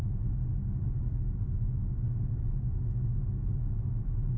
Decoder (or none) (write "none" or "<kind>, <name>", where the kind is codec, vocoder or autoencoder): none